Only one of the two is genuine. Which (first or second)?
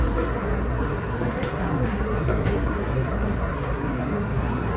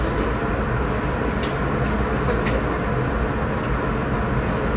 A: second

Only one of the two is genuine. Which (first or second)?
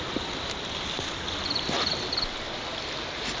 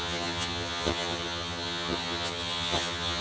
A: first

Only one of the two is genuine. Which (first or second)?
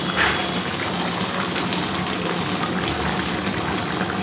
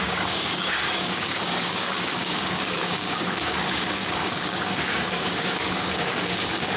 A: first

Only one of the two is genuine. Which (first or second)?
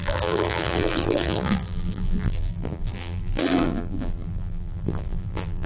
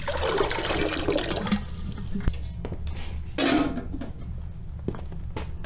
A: second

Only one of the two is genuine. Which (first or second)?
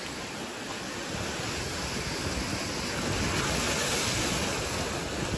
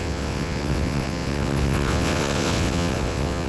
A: first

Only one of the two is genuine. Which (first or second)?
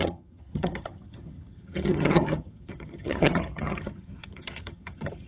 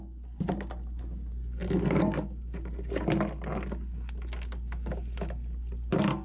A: second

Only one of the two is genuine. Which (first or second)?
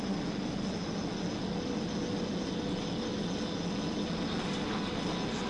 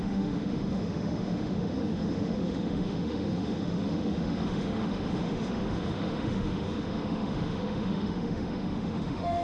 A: first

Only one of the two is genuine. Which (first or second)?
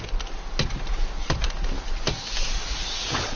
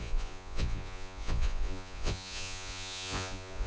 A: first